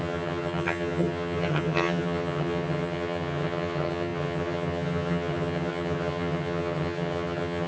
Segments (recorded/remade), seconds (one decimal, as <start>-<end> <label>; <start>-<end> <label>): 0.0-7.7 remade